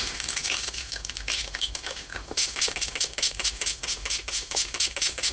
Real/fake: fake